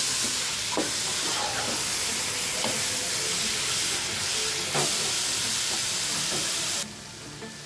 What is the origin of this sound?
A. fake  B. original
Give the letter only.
B